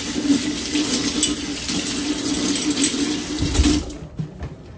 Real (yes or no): yes